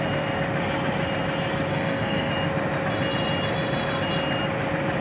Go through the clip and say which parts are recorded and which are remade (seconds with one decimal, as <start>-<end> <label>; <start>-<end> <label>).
0.0-1.7 recorded; 1.7-2.3 remade; 2.3-5.0 recorded